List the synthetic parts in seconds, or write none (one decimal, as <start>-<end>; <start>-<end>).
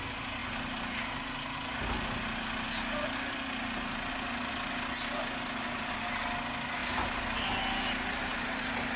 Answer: 8.3-9.0